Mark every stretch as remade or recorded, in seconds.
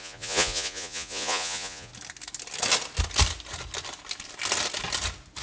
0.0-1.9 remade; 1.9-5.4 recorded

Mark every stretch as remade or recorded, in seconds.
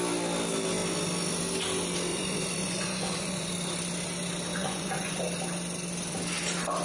0.0-2.1 recorded; 2.1-3.5 remade; 3.5-4.6 recorded; 4.6-5.2 remade; 5.2-6.8 recorded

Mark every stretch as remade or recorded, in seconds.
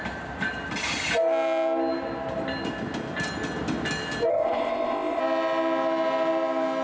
0.0-4.3 recorded; 4.3-5.2 remade; 5.2-6.8 recorded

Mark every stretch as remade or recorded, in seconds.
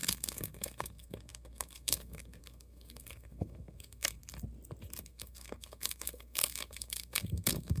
0.0-4.2 remade; 4.2-5.0 recorded; 5.0-7.8 remade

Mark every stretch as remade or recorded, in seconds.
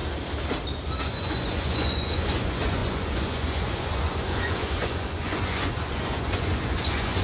0.0-1.0 recorded; 1.0-7.2 remade